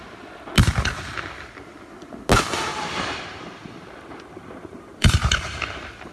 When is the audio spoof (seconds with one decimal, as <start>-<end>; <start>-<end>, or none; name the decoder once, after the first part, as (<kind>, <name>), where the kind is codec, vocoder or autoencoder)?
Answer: 2.7-5.6 (vocoder, BigVGAN v2)